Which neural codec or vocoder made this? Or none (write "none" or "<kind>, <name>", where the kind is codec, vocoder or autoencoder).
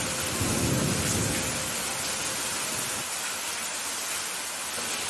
vocoder, BigVGAN v2